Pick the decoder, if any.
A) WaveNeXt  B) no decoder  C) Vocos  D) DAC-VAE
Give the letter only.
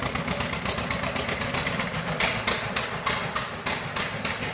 B